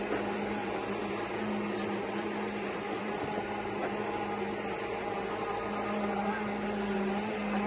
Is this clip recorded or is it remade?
recorded